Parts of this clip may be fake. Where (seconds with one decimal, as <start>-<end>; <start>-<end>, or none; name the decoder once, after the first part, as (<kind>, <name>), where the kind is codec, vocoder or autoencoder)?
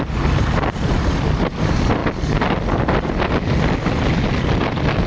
none